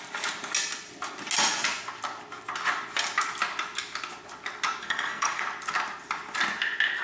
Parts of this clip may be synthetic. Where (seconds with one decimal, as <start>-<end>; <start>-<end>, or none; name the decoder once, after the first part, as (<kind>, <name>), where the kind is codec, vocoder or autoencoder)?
4.8-5.4 (codec, SNAC)